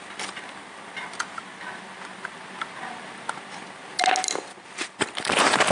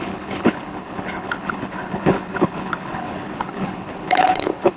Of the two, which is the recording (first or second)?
first